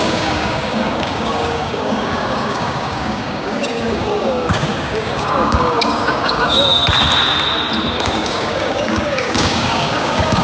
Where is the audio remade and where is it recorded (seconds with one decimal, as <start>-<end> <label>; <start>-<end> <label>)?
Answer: 0.0-6.8 remade; 6.8-7.9 recorded; 7.9-10.4 remade